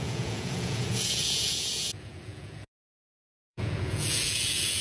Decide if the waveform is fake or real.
fake